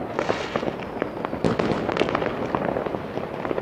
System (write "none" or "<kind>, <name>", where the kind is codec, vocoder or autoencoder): none